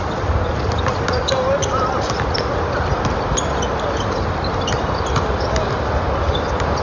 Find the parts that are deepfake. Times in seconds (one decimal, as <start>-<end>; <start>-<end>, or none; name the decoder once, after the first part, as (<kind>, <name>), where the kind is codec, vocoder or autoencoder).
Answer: none